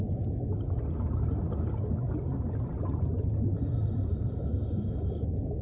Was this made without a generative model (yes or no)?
yes